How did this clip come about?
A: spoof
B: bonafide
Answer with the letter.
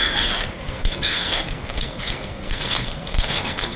A